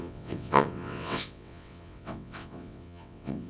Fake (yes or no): yes